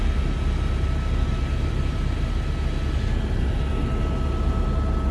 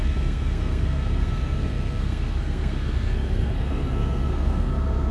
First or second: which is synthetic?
second